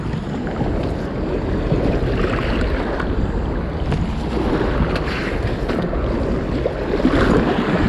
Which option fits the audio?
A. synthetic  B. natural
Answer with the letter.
B